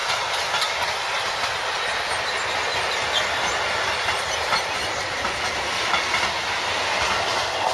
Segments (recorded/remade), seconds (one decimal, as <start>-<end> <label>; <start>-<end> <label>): 0.0-7.7 recorded